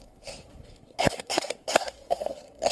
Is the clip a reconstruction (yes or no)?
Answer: yes